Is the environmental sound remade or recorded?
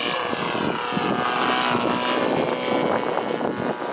recorded